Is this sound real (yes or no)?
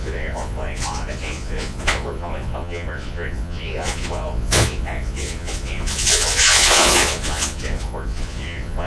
no